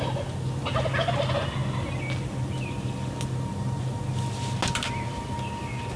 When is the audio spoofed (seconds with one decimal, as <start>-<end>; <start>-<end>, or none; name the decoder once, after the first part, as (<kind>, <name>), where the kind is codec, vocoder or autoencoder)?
none